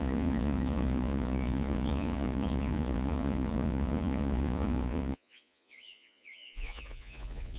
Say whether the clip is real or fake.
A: fake